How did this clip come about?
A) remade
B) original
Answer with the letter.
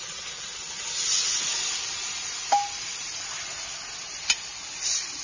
B